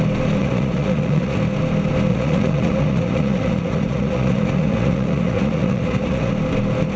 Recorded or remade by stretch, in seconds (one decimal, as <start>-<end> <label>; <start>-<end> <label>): 0.0-0.4 recorded; 0.4-1.4 remade; 1.4-2.1 recorded; 2.1-6.3 remade; 6.3-7.0 recorded